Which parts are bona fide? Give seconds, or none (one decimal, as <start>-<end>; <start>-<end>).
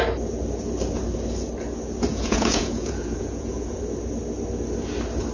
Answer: 0.0-2.1; 3.8-5.3